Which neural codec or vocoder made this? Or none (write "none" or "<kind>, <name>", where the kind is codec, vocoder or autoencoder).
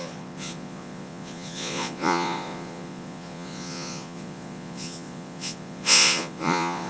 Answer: vocoder, Vocos